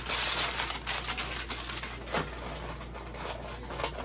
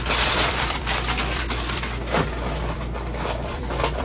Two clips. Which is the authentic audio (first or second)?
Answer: first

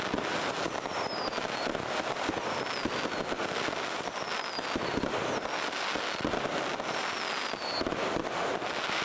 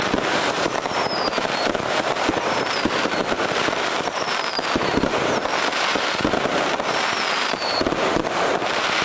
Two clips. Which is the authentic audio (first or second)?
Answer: first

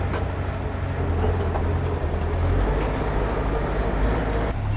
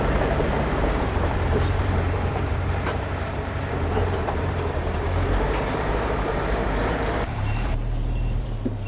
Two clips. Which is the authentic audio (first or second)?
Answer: first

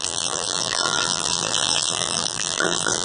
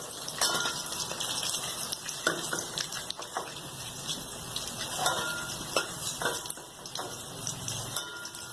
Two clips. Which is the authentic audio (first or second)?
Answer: second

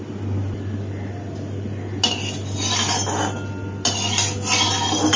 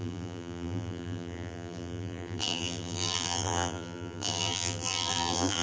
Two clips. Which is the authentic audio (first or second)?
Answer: first